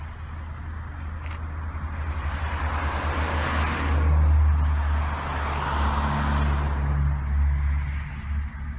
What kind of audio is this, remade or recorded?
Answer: recorded